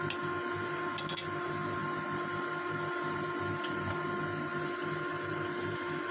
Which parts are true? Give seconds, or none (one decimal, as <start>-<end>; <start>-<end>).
0.0-6.1